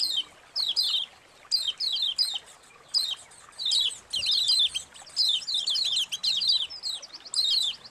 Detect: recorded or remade recorded